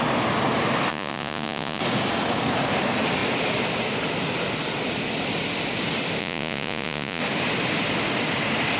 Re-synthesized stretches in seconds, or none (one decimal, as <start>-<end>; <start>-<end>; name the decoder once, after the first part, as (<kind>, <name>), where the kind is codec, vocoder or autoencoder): 0.9-1.8 (vocoder, Vocos); 6.2-7.2